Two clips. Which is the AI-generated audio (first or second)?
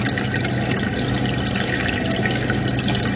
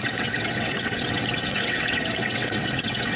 second